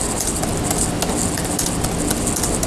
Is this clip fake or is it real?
real